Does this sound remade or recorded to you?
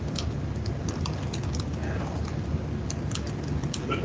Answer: recorded